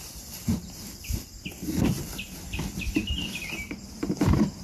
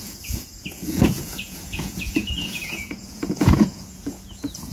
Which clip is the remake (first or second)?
second